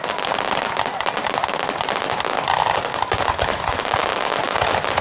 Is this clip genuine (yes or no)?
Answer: yes